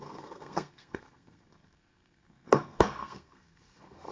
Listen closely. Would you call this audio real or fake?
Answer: fake